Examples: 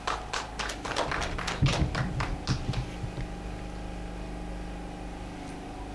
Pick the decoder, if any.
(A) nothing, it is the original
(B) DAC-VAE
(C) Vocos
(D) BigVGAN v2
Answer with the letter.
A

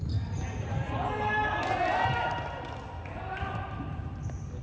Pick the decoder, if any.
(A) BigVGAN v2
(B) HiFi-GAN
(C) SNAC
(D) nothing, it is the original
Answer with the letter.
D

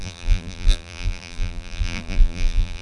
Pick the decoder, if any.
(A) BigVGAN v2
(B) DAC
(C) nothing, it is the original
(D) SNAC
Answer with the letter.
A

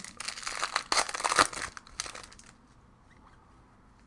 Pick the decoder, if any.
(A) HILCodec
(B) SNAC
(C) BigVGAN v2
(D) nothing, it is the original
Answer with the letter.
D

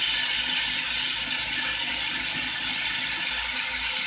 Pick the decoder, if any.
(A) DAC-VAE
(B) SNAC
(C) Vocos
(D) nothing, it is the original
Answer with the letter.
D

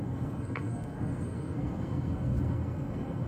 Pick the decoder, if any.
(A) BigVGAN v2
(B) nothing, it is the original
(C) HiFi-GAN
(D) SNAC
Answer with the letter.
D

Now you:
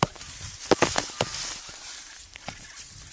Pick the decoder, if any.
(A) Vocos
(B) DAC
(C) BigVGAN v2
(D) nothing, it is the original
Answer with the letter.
C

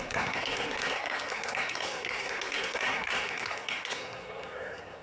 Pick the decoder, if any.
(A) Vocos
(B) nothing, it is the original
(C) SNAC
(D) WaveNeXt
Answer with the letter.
C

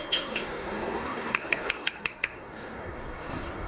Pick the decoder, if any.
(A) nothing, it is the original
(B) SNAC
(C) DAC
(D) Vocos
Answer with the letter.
B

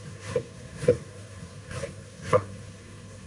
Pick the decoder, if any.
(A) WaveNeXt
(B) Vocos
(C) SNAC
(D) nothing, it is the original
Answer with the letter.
C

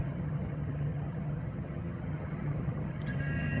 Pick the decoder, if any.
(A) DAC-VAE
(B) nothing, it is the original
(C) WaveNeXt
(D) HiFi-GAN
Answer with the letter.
D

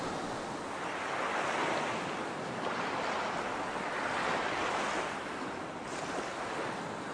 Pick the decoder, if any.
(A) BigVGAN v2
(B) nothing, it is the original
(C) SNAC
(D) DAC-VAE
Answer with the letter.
B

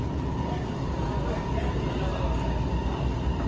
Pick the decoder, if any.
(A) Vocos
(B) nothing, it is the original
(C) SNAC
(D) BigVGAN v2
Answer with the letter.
B